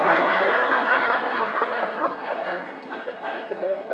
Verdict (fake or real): fake